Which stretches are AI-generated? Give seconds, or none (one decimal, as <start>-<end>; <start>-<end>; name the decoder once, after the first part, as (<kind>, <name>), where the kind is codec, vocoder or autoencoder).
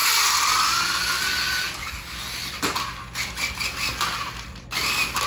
none